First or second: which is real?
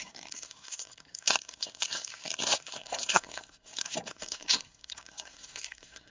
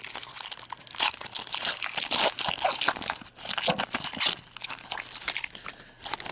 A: second